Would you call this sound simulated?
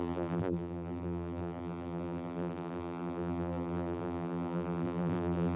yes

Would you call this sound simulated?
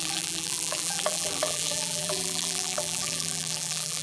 yes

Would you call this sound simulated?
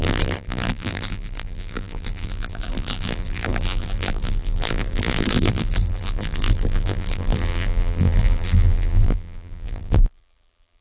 yes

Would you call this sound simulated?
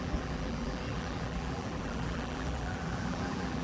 yes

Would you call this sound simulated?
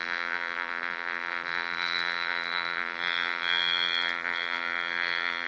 yes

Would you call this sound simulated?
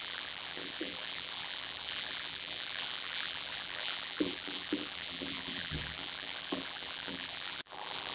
yes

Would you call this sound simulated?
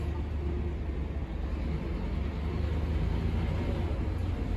no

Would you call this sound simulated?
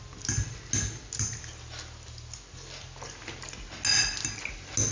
no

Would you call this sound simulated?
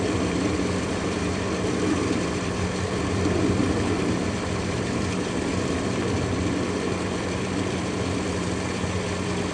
yes